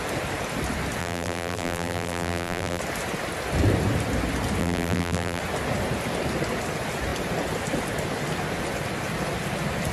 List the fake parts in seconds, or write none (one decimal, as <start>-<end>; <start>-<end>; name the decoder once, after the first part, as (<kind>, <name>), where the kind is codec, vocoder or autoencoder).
1.0-2.8 (vocoder, BigVGAN v2); 4.6-5.4